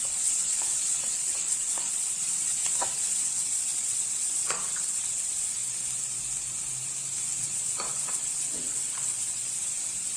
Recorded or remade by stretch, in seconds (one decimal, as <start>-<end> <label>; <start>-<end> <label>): 0.0-5.6 remade; 5.6-7.4 recorded; 7.4-10.2 remade